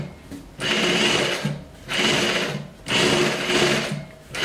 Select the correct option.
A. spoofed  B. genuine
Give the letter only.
B